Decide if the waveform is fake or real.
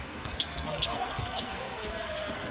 fake